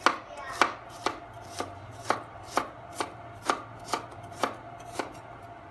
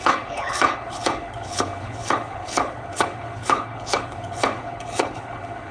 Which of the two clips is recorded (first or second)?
first